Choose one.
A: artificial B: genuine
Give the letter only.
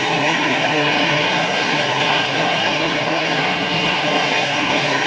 A